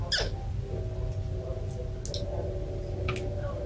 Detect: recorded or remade recorded